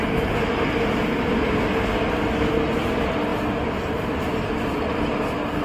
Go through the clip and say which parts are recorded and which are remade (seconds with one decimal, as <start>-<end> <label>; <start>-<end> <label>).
0.0-5.6 recorded